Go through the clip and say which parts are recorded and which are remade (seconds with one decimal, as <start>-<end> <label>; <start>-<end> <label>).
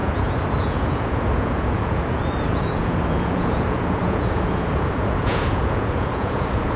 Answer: 0.0-6.8 remade